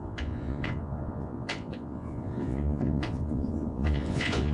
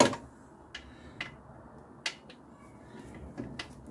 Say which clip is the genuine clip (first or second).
second